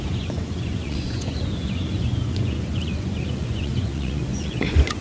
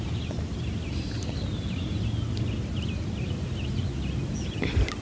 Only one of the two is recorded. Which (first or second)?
second